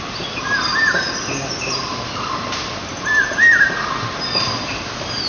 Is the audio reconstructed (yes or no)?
no